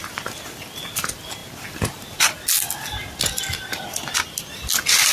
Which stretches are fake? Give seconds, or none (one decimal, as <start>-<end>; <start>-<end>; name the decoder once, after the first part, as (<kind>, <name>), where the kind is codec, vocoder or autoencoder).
none